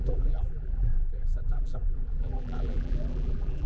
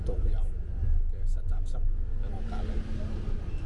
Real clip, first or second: second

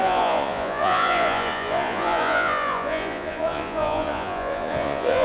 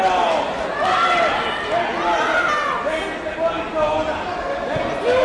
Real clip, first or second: second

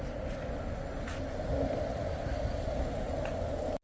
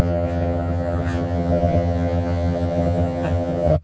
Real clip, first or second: first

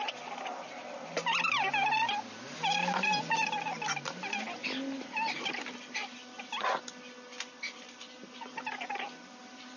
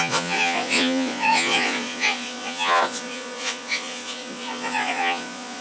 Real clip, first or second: first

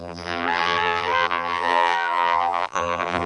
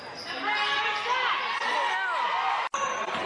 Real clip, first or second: second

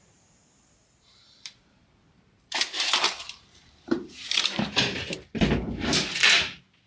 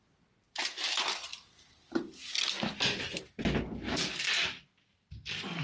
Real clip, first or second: second